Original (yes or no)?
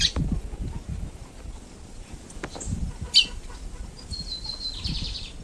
yes